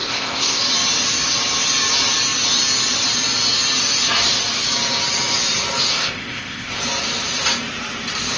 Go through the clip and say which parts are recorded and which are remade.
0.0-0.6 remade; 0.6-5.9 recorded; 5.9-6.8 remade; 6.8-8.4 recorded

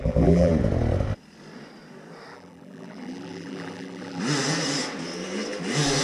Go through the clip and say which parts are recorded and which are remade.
0.0-0.5 remade; 0.5-2.3 recorded; 2.3-4.2 remade; 4.2-6.0 recorded

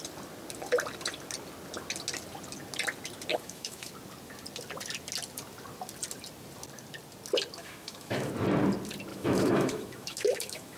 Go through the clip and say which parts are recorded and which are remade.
0.0-3.3 recorded; 3.3-3.9 remade; 3.9-7.6 recorded; 7.6-8.3 remade; 8.3-9.1 recorded; 9.1-10.8 remade

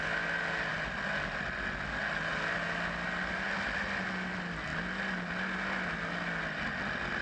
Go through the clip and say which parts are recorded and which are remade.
0.0-7.2 recorded

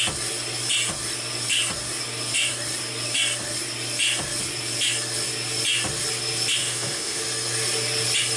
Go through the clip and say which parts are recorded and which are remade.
0.0-6.6 recorded; 6.6-7.2 remade; 7.2-8.4 recorded

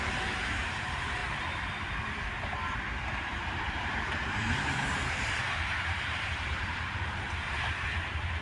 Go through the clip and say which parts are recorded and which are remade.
0.0-1.2 remade; 1.2-3.1 recorded; 3.1-6.3 remade; 6.3-8.4 recorded

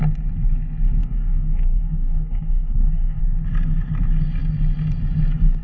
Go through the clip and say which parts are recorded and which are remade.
0.0-1.0 recorded; 1.0-3.2 remade; 3.2-5.6 recorded